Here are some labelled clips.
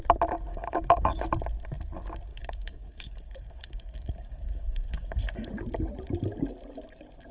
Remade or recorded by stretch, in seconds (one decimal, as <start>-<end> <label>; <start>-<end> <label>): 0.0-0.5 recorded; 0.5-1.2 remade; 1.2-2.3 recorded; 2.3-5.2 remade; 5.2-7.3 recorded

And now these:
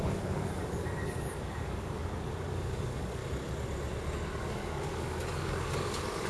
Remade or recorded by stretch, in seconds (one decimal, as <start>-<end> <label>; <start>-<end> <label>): 0.0-2.0 remade; 2.0-2.5 recorded; 2.5-3.2 remade; 3.2-4.4 recorded; 4.4-6.3 remade

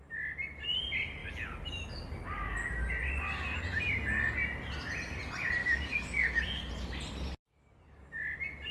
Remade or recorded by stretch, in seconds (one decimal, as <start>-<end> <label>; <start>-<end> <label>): 0.0-5.6 recorded; 5.6-6.7 remade; 6.7-8.7 recorded

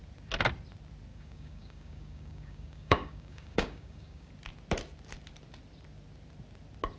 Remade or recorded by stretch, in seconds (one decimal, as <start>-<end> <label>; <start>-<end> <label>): 0.0-1.1 recorded; 1.1-4.3 remade; 4.3-7.0 recorded

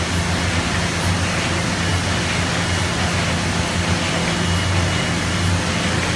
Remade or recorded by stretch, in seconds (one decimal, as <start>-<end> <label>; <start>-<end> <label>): 0.0-6.2 recorded

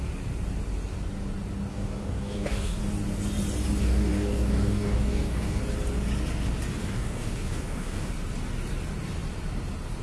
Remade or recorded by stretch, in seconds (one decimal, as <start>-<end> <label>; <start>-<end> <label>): 0.0-1.7 recorded; 1.7-2.8 remade; 2.8-3.8 recorded; 3.8-5.6 remade; 5.6-6.8 recorded; 6.8-8.1 remade; 8.1-10.0 recorded

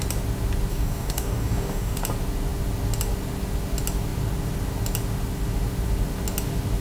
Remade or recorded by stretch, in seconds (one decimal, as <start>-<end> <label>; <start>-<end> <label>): 0.0-0.7 recorded; 0.7-2.0 remade; 2.0-6.8 recorded

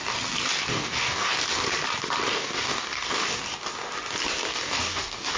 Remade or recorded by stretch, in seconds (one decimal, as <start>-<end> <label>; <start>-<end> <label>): 0.0-0.7 recorded; 0.7-1.3 remade; 1.3-2.3 recorded; 2.3-3.4 remade; 3.4-4.5 recorded; 4.5-5.4 remade